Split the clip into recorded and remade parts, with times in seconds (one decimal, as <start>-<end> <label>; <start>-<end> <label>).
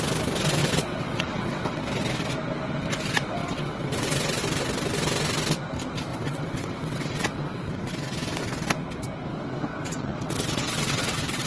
0.0-0.6 recorded; 0.6-1.8 remade; 1.8-3.4 recorded; 3.4-4.4 remade; 4.4-6.1 recorded; 6.1-7.9 remade; 7.9-9.3 recorded; 9.3-11.5 remade